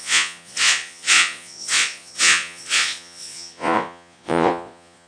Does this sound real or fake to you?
fake